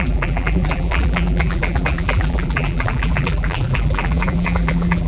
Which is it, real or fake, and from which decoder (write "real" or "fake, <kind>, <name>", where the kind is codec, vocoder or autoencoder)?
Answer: fake, vocoder, BigVGAN v2